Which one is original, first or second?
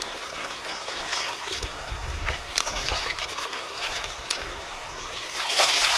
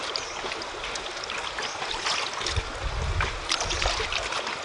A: second